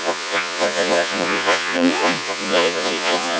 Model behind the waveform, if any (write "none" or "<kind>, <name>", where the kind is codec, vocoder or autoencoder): vocoder, Vocos